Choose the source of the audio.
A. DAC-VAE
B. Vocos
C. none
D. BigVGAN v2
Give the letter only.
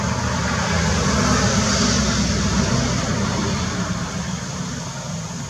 C